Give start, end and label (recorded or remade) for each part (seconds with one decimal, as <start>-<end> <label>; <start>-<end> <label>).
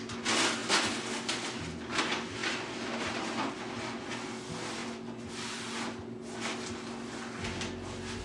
0.0-8.2 recorded